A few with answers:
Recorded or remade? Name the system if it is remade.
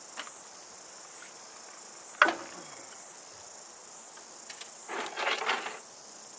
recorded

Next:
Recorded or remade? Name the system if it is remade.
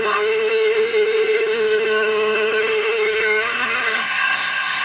remade, codec, SNAC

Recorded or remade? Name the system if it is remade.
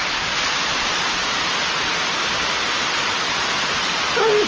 recorded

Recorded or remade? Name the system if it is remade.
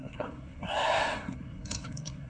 remade, codec, SNAC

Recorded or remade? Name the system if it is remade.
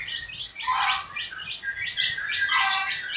recorded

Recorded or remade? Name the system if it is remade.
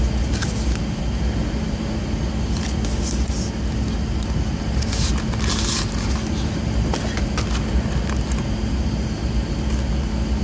recorded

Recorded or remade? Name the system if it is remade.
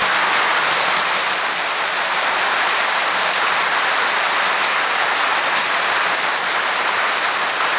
recorded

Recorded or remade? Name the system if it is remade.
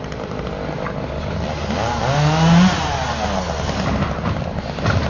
recorded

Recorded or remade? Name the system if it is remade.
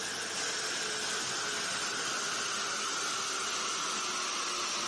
recorded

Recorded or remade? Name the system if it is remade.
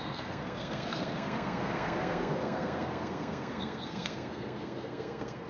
remade, codec, SNAC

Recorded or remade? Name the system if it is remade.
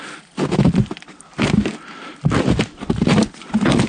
recorded